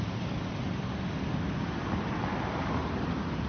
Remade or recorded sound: recorded